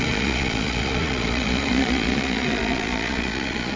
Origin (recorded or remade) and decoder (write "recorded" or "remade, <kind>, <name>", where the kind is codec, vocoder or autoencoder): remade, vocoder, Vocos